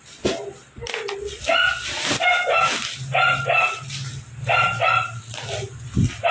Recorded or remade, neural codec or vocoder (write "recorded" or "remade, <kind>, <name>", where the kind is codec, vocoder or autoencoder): recorded